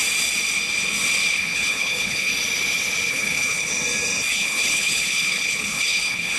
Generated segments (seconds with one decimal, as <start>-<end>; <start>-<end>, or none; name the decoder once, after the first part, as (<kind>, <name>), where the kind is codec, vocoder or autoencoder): 1.3-2.3 (codec, HILCodec); 3.1-3.7; 4.3-6.4

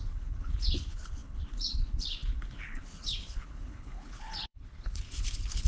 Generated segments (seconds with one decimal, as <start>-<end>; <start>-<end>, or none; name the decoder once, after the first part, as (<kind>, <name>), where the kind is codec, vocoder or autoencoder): 0.0-5.7 (codec, HILCodec)

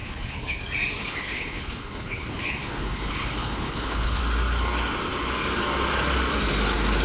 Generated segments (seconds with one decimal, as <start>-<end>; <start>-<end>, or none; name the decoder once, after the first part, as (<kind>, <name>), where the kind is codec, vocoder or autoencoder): 0.0-0.6 (codec, HILCodec); 1.0-4.2

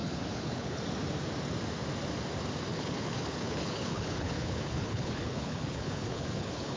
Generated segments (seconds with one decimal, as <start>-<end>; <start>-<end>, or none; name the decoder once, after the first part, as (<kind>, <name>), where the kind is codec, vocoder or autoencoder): 0.0-0.8 (codec, HILCodec); 2.7-6.8

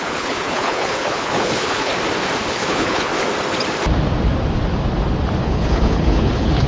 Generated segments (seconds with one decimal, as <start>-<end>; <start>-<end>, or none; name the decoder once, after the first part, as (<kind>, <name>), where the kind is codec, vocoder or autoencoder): 0.0-1.9 (codec, HILCodec); 2.5-3.1; 5.4-6.7

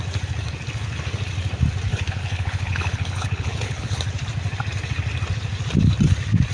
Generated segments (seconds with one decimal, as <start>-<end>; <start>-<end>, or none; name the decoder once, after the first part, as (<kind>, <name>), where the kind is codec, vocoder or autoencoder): 1.9-4.0 (codec, HILCodec)

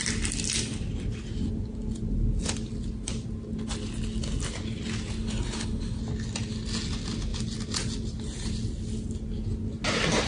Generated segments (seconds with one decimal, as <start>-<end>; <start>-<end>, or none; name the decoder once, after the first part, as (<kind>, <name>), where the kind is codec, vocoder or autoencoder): 5.2-6.0 (codec, HILCodec)